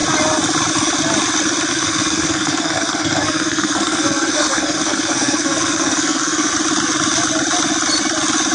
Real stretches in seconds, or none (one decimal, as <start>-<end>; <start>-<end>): 0.0-1.7; 6.5-8.5